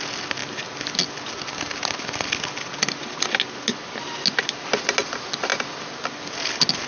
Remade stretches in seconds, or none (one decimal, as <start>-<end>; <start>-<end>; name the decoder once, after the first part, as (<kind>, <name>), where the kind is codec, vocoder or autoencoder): none